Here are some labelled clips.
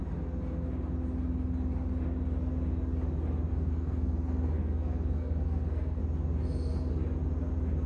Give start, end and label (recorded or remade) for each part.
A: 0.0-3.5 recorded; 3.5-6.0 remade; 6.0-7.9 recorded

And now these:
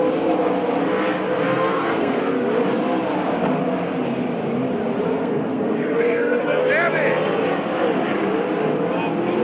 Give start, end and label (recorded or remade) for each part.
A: 0.0-1.5 recorded; 1.5-2.2 remade; 2.2-5.1 recorded; 5.1-6.6 remade; 6.6-9.4 recorded